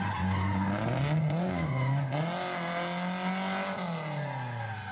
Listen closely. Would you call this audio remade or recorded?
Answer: recorded